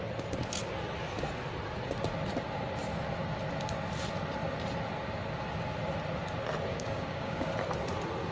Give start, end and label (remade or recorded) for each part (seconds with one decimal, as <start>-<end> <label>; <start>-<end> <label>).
0.0-6.7 recorded; 6.7-7.5 remade; 7.5-8.3 recorded